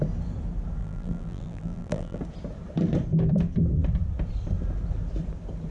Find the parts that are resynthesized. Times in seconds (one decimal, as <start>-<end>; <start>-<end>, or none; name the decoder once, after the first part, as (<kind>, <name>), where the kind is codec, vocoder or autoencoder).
0.8-2.2 (vocoder, BigVGAN v2)